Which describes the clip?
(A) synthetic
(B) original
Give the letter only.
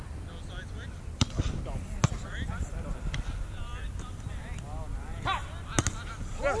B